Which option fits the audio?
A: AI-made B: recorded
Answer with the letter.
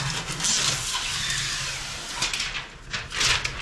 B